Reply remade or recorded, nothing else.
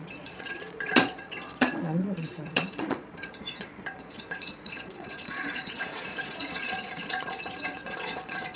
remade